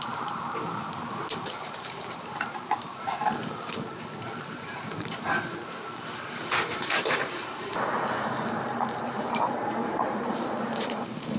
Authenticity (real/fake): fake